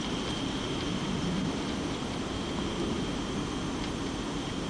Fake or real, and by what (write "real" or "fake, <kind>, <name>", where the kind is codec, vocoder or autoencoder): real